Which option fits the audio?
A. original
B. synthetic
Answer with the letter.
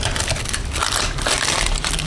B